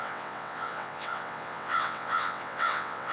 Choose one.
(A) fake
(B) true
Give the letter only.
A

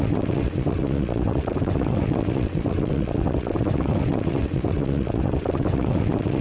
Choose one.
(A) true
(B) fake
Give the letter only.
B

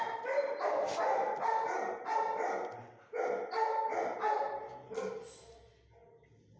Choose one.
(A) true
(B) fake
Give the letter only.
A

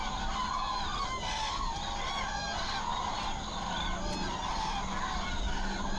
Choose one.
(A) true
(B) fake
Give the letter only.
A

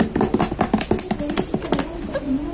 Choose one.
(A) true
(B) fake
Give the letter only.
A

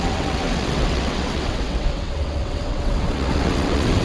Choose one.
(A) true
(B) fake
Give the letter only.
B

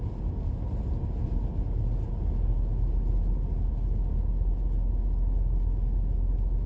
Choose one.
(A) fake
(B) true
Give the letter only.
B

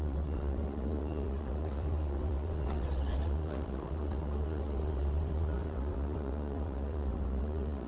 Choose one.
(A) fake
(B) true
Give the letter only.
A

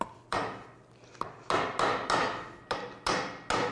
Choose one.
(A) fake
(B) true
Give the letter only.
B